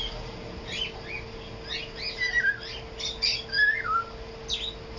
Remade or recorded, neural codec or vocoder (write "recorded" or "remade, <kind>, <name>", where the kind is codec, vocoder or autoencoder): recorded